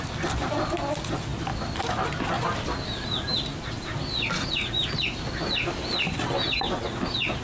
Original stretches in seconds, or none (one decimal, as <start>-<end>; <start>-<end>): 0.0-7.4